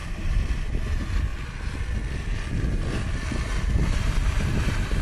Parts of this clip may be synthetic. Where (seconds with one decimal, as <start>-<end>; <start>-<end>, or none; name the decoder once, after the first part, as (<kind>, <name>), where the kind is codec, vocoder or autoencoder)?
0.0-1.3 (vocoder, BigVGAN v2); 3.9-5.0